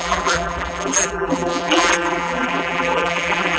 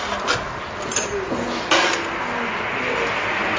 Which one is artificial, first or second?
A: first